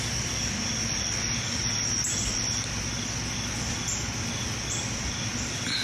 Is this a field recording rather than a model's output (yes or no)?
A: yes